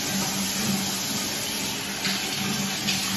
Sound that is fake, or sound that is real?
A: real